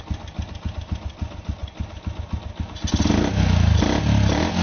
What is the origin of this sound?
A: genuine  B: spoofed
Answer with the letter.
A